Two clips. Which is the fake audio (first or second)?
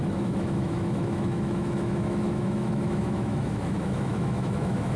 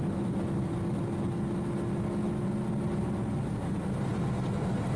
first